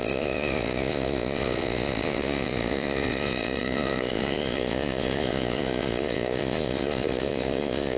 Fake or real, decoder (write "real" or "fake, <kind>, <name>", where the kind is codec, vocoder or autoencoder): fake, vocoder, Vocos